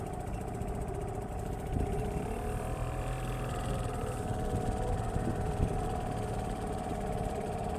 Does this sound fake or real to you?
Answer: fake